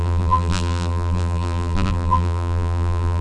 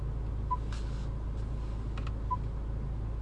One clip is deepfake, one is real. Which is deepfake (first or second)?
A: first